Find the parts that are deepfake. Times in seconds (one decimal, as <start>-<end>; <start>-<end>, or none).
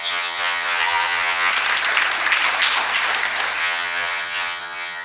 0.0-1.5; 3.6-5.0